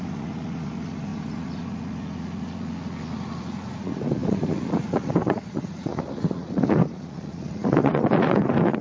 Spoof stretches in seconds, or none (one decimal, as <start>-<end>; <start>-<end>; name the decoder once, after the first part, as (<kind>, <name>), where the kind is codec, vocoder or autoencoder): 0.0-8.8 (vocoder, Vocos)